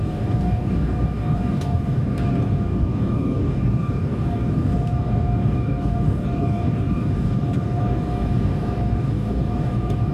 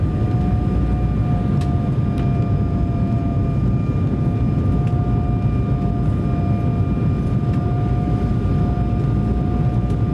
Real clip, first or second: second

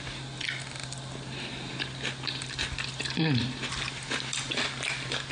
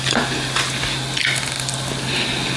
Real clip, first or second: second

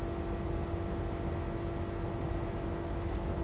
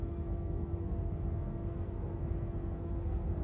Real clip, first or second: first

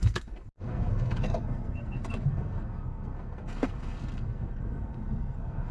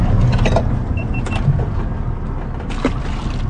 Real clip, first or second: second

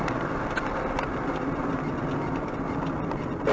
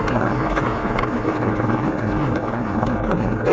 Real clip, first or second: first